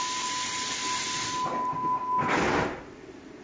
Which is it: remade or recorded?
recorded